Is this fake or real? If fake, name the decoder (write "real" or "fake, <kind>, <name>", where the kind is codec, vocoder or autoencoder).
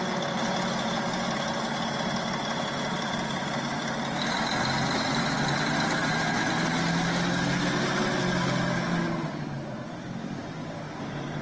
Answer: real